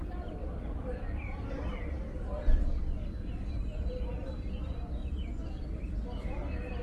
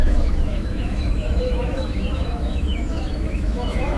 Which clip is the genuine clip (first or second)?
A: first